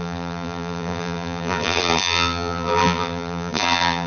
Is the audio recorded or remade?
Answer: remade